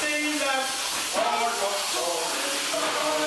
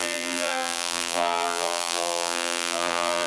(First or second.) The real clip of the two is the first